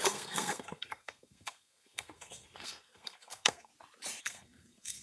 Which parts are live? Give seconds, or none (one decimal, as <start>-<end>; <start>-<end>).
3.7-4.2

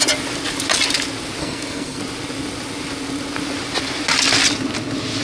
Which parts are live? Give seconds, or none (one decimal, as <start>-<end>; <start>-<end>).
0.0-1.4; 2.0-5.2

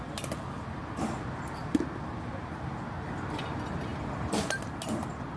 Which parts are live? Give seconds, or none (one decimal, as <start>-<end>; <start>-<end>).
0.0-5.4

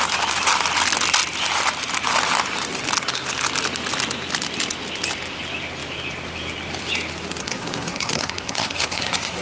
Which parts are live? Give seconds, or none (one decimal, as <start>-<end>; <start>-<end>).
0.0-7.4

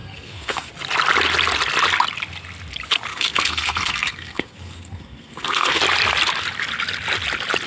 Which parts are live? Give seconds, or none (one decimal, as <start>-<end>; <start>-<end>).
0.7-3.1; 5.8-7.7